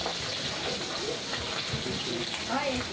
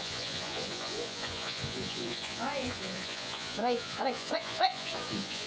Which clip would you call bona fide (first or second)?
first